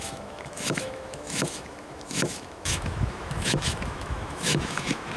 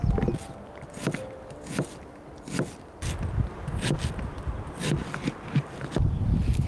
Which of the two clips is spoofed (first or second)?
first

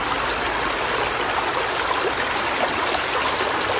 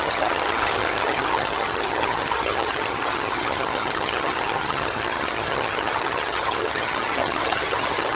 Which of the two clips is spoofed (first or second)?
second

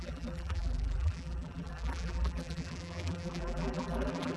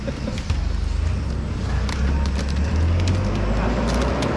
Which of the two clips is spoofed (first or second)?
first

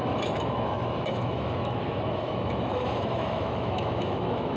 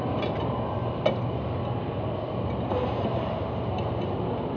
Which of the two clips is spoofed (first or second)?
first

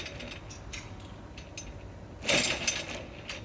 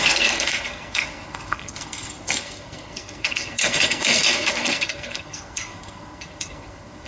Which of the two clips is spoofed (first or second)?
second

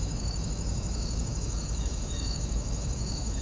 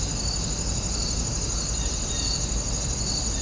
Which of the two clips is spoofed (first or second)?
first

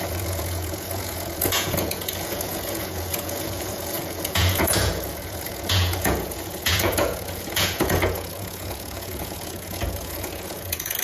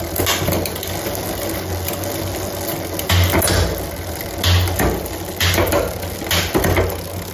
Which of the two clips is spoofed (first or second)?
first